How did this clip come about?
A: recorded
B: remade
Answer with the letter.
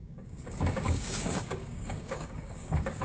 B